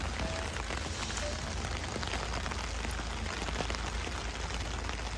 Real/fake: real